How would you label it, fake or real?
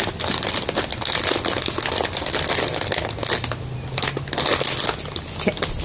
real